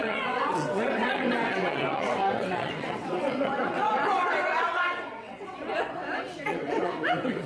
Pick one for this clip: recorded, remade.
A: remade